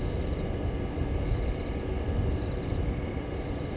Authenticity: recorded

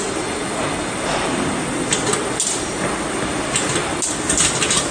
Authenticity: recorded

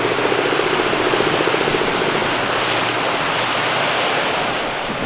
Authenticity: recorded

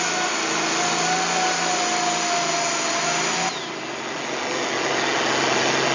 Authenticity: recorded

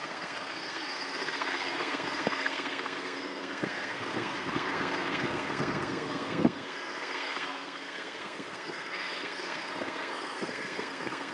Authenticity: remade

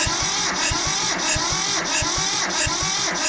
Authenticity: recorded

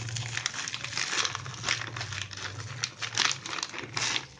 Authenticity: recorded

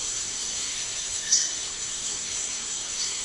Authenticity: remade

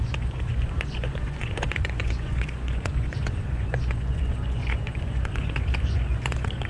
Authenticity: remade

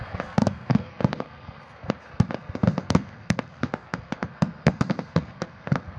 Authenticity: remade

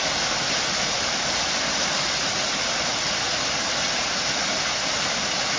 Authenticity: recorded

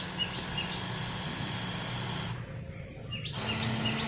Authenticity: recorded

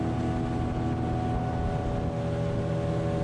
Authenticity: recorded